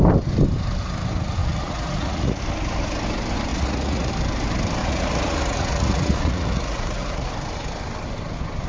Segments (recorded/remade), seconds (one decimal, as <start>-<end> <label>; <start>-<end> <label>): 0.0-1.4 recorded; 1.4-2.4 remade; 2.4-3.5 recorded; 3.5-4.1 remade; 4.1-4.8 recorded; 4.8-7.3 remade; 7.3-8.7 recorded

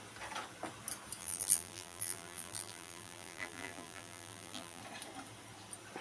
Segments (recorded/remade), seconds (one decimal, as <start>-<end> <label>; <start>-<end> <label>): 0.0-1.2 recorded; 1.2-4.8 remade; 4.8-6.0 recorded

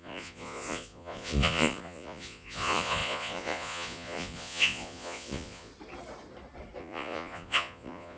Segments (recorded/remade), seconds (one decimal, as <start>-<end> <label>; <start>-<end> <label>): 0.0-5.7 remade; 5.7-6.8 recorded; 6.8-8.2 remade

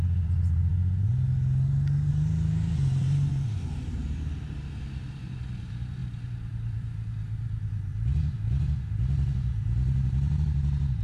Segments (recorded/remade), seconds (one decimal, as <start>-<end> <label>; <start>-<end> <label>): 0.0-0.7 remade; 0.7-2.1 recorded; 2.1-11.0 remade

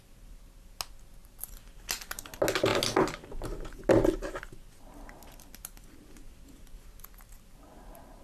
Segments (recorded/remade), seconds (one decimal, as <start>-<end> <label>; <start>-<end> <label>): 0.0-8.2 recorded